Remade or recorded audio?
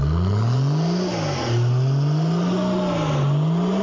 recorded